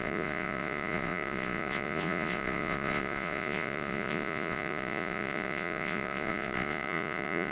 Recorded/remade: remade